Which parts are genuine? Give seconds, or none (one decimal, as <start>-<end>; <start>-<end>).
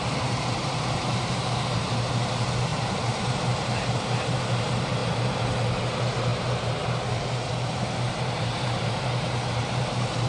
none